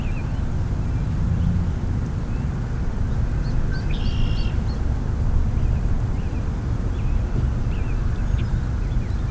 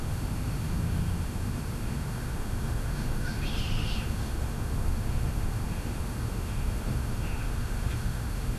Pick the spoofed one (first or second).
second